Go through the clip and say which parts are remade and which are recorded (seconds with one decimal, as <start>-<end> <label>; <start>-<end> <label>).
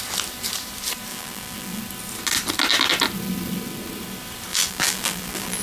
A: 0.0-1.1 recorded; 1.1-1.8 remade; 1.8-4.5 recorded; 4.5-5.6 remade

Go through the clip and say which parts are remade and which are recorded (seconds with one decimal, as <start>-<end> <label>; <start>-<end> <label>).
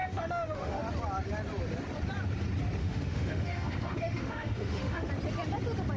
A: 0.0-0.8 remade; 0.8-2.8 recorded; 2.8-5.1 remade; 5.1-6.0 recorded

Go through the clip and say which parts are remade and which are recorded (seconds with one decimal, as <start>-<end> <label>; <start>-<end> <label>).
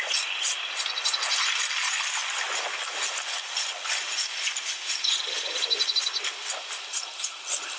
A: 0.0-7.8 recorded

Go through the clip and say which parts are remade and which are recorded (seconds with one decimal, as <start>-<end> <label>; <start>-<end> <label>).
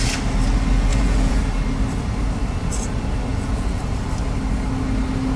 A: 0.0-0.9 recorded; 0.9-1.4 remade; 1.4-3.3 recorded; 3.3-3.8 remade; 3.8-5.4 recorded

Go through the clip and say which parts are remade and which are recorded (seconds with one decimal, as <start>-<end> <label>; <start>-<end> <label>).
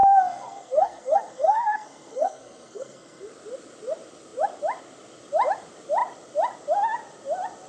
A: 0.0-3.3 remade; 3.3-7.7 recorded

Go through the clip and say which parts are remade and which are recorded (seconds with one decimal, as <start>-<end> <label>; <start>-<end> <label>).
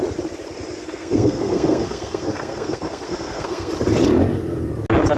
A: 0.0-0.8 recorded; 0.8-3.7 remade; 3.7-5.2 recorded